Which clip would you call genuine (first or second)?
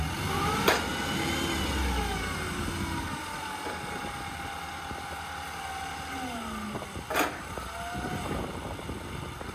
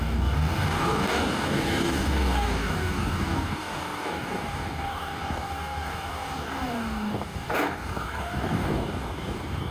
first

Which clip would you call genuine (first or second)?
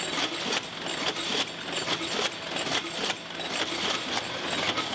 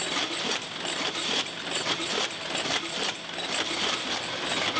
first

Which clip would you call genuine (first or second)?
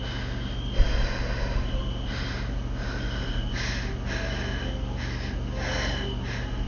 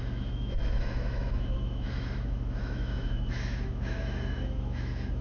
first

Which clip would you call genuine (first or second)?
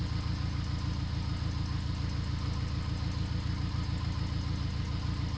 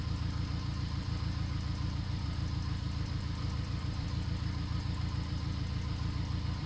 first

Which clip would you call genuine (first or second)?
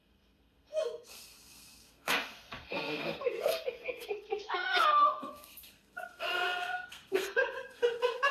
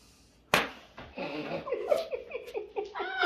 second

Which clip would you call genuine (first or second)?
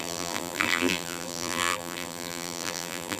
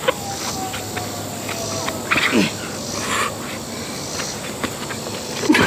second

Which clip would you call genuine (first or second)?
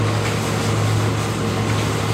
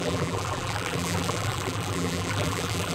first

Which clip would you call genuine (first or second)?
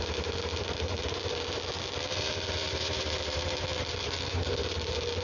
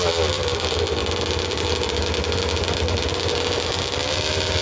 second